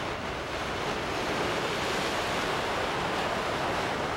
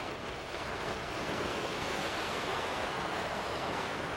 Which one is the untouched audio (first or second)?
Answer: first